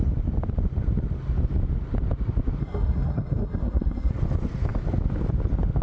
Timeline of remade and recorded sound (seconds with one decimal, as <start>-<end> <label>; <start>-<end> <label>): 0.0-2.6 recorded; 2.6-4.1 remade; 4.1-5.8 recorded